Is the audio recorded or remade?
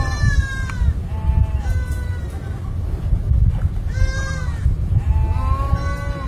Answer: recorded